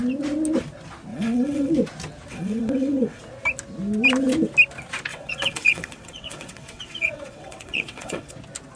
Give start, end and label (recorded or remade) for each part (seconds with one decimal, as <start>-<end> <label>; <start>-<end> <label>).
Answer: 0.0-1.1 recorded; 1.1-1.7 remade; 1.7-2.3 recorded; 2.3-3.2 remade; 3.2-5.1 recorded; 5.1-8.3 remade; 8.3-8.8 recorded